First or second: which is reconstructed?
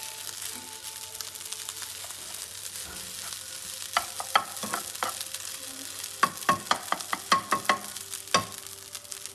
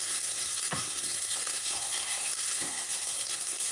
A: second